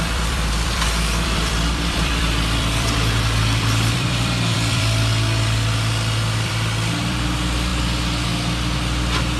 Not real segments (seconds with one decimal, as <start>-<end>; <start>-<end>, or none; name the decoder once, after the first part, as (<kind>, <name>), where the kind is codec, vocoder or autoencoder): 0.0-7.7 (vocoder, BigVGAN v2)